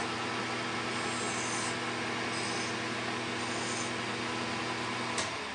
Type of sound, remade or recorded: recorded